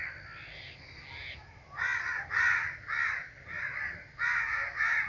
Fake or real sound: real